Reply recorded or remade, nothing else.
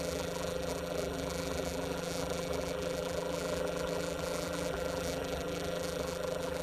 remade